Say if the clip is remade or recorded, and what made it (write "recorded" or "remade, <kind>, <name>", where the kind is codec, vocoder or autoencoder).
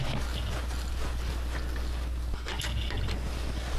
recorded